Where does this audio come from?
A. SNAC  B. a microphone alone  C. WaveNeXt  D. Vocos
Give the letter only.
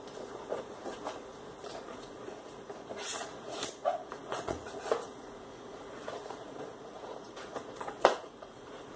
D